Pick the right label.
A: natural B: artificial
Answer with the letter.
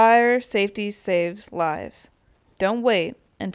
A